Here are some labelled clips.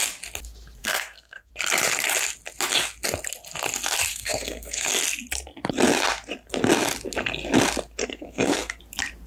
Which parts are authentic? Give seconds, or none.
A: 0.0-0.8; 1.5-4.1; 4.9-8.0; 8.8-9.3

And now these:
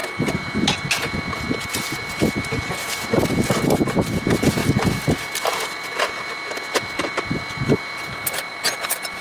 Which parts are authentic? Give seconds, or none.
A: 0.0-9.2

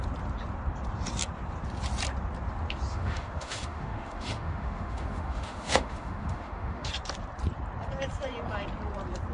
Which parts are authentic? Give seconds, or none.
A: 0.0-2.9; 6.9-9.3

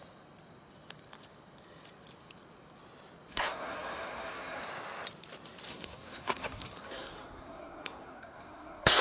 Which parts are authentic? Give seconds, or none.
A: 0.0-3.3; 4.6-5.7

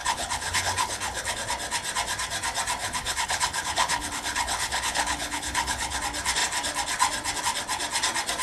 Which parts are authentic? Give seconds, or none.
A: 1.4-2.8; 6.0-8.4